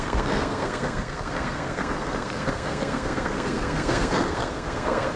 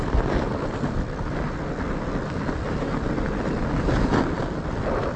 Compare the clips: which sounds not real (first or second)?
first